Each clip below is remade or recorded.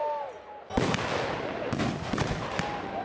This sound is recorded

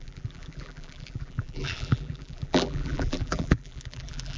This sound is remade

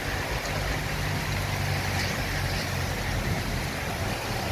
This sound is recorded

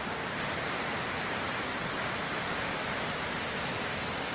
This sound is recorded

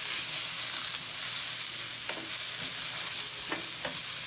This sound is recorded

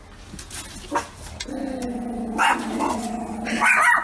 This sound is recorded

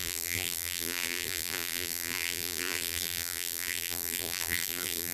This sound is remade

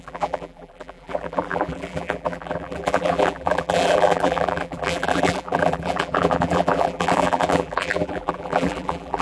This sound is remade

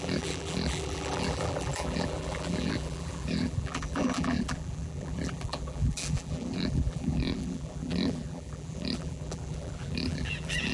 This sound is remade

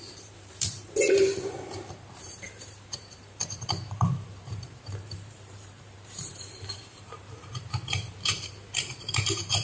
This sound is remade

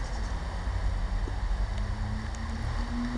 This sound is recorded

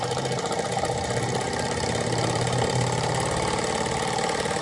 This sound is remade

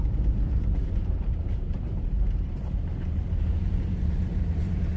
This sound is remade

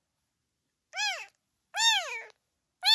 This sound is recorded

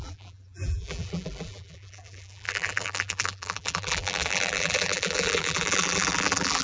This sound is remade